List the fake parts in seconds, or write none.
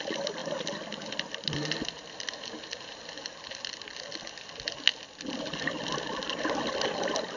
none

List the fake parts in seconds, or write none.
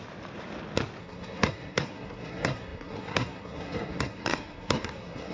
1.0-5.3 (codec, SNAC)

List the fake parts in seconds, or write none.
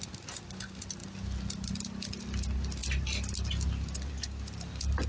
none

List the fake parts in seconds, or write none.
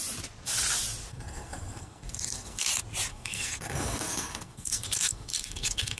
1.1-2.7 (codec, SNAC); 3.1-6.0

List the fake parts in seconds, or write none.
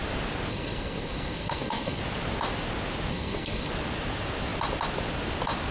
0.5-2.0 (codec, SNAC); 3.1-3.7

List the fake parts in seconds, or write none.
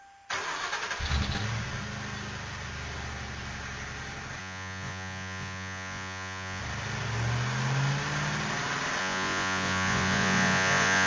4.4-6.6 (vocoder, Vocos); 9.0-11.1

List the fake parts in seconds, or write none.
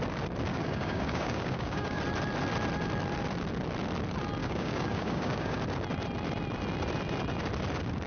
0.5-2.0 (codec, DAC); 4.4-5.6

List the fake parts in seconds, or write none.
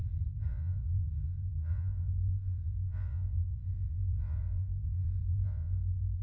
0.5-6.2 (vocoder, Vocos)